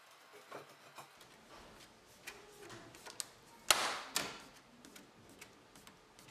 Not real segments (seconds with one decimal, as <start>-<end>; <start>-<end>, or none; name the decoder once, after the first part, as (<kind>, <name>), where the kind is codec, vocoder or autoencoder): none